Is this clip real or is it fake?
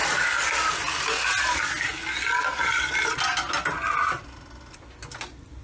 real